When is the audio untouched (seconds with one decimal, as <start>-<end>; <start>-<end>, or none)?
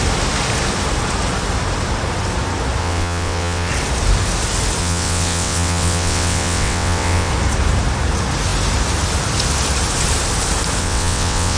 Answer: 0.0-2.8; 3.7-4.8; 7.3-10.8